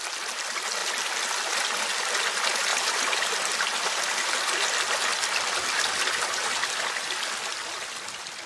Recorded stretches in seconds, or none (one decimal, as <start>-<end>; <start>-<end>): 0.0-8.5